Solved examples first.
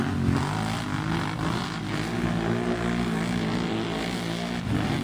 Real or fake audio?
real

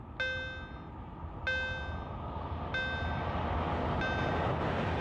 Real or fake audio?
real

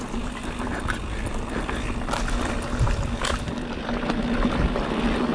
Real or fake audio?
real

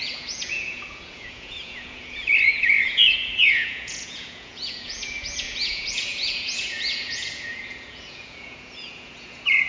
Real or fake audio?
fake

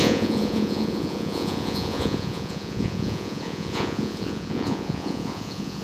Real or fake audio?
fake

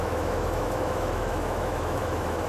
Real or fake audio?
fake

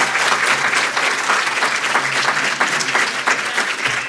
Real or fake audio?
real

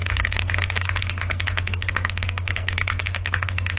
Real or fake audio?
fake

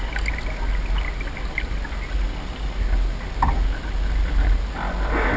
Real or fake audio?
real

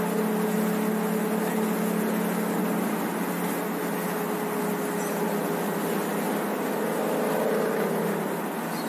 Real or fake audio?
real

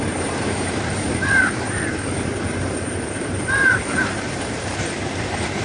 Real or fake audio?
fake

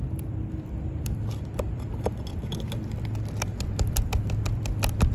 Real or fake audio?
fake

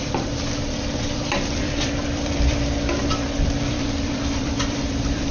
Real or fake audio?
fake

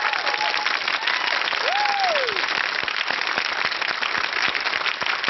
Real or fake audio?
real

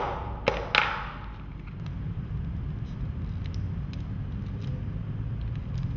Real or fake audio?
real